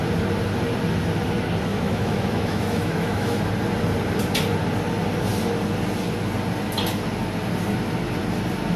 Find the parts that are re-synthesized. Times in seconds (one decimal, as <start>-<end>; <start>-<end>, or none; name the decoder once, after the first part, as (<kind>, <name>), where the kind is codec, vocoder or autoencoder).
1.7-3.4 (autoencoder, DAC-VAE)

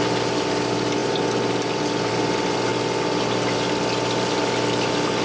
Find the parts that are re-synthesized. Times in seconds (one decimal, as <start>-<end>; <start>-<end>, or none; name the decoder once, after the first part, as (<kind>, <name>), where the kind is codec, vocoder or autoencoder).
none

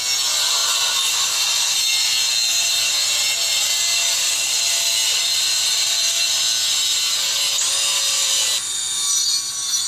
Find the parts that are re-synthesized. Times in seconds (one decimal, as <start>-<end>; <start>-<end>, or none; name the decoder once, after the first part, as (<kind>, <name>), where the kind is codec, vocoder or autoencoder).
none

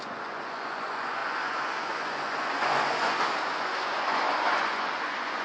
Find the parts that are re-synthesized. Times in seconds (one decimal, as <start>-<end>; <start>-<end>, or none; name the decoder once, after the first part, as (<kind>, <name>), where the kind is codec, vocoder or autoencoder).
0.0-5.4 (vocoder, Vocos)

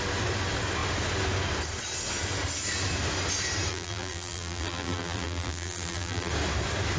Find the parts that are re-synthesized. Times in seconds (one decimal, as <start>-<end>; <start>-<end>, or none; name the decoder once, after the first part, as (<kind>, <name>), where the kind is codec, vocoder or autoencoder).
3.7-6.3 (vocoder, BigVGAN v2)

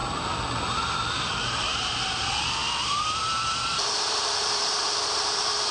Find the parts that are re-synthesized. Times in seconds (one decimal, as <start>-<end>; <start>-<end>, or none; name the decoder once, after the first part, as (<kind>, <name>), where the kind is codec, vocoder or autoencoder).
1.3-5.7 (vocoder, BigVGAN v2)

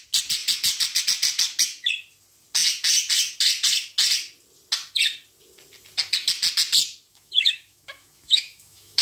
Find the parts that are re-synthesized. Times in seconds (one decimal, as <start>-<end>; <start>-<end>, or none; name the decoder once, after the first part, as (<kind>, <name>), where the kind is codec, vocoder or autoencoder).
7.1-9.0 (autoencoder, DAC-VAE)

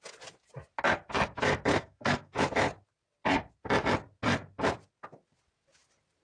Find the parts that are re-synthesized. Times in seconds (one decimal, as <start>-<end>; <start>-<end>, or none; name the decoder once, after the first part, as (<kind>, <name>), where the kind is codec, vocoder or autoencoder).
1.7-2.4 (codec, SNAC)